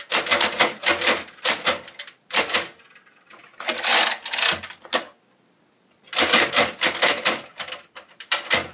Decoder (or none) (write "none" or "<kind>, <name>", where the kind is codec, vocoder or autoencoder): none